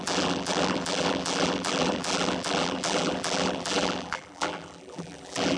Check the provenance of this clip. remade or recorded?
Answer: remade